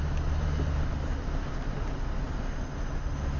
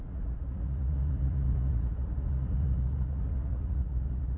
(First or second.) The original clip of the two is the first